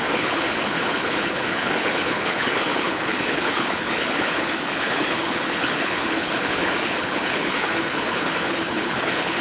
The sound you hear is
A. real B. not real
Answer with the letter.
B